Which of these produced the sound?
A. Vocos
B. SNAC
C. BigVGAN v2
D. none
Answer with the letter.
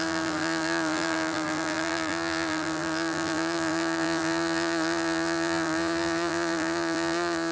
C